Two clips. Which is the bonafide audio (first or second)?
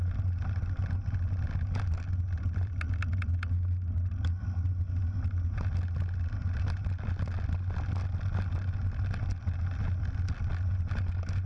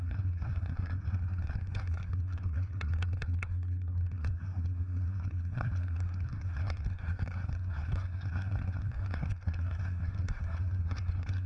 first